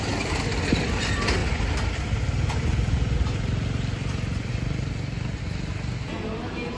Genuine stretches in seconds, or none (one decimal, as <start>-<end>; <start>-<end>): 0.0-6.8